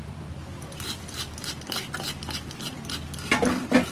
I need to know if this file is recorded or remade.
recorded